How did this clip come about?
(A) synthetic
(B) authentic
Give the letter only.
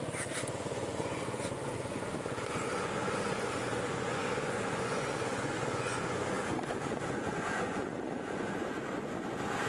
A